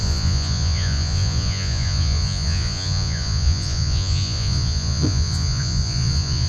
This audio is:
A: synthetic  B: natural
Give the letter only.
A